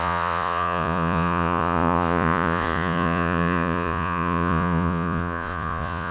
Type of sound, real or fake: fake